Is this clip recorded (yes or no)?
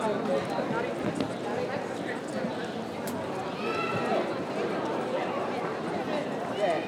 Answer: yes